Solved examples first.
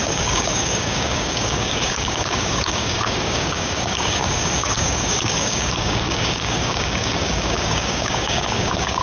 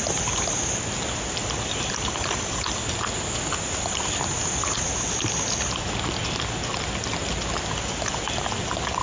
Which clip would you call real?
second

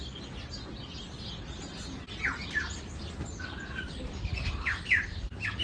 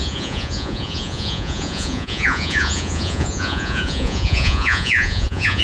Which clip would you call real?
first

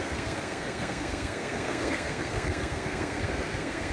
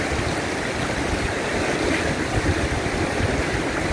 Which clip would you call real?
second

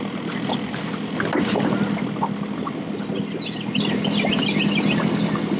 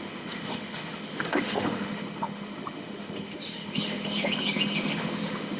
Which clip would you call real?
first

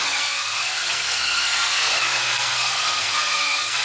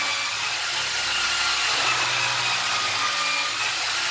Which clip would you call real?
second